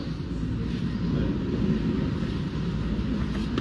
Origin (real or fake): real